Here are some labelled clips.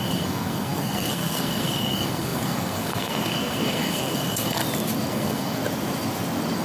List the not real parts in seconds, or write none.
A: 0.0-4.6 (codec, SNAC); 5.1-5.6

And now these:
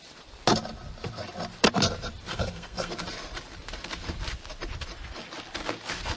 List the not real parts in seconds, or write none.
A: 2.3-2.9 (codec, SNAC)

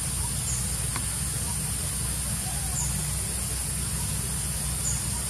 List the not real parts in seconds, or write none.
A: none

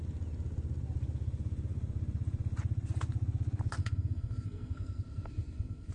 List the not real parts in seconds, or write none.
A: 3.8-5.9 (codec, SNAC)

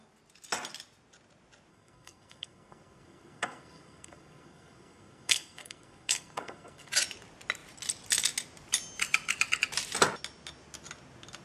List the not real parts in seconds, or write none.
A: 1.7-6.9 (codec, SNAC)

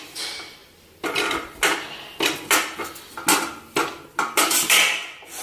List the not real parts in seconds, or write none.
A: none

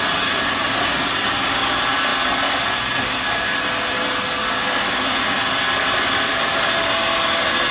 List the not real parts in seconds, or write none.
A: none

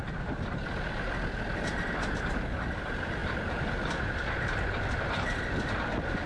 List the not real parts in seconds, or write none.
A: none